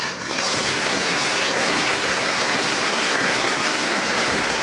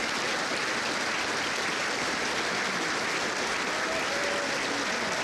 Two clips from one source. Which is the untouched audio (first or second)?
second